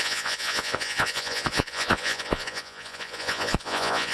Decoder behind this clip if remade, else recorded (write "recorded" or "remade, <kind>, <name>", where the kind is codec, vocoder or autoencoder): remade, vocoder, Vocos